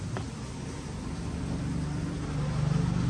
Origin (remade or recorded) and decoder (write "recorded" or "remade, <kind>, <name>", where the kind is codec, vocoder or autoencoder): recorded